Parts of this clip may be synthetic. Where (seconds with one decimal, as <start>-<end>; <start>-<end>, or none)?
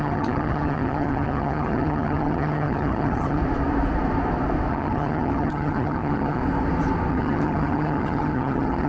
0.0-3.4; 4.7-6.4; 7.1-8.9